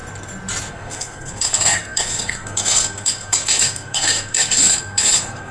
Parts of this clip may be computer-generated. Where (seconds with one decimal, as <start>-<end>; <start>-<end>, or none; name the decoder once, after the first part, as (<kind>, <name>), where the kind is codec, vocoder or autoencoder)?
0.7-5.5 (codec, SNAC)